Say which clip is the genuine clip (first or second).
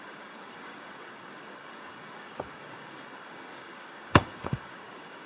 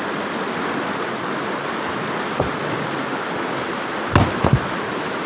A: second